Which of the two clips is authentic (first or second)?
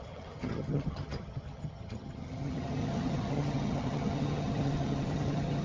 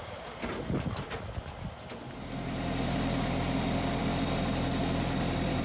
second